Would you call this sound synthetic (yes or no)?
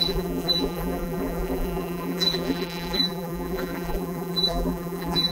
yes